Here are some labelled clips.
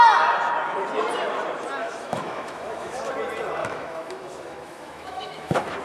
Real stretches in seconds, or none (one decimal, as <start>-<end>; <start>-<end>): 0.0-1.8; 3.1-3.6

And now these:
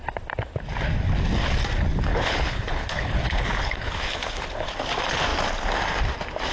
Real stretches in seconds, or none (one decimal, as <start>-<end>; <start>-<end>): 0.0-2.1; 4.7-6.5

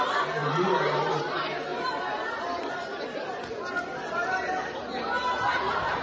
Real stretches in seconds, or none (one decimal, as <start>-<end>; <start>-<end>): 0.0-0.4; 1.1-6.0